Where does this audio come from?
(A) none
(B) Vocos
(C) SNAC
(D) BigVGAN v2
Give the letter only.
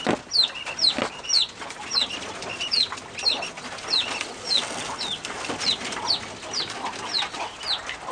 A